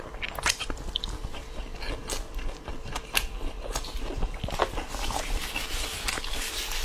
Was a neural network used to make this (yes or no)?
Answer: no